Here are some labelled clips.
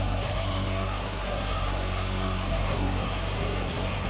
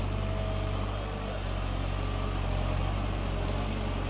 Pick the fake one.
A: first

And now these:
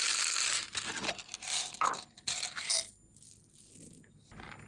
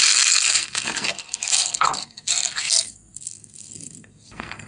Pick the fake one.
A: second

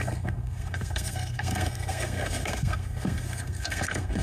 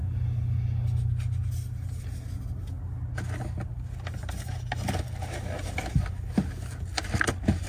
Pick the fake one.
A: first